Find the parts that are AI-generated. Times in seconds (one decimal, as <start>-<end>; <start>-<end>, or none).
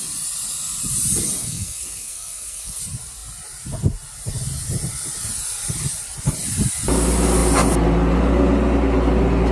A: 1.4-2.8